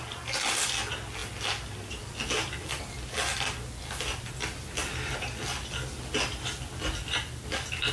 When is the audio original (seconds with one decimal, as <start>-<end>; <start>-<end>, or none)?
0.0-7.9